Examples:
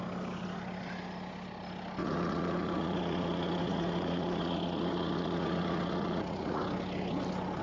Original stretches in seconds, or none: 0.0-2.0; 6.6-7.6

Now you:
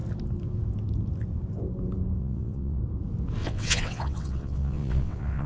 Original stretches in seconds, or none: 0.0-2.2; 2.8-3.4

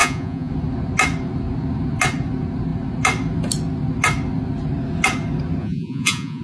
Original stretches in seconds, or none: 0.5-5.6

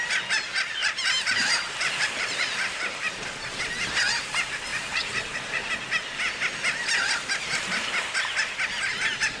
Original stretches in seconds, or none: 0.0-0.8; 3.6-4.7; 5.7-9.4

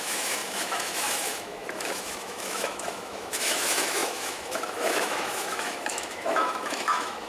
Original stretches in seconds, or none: none